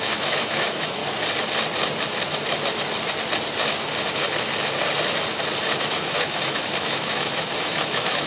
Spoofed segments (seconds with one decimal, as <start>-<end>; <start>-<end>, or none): 0.0-1.0; 5.8-8.3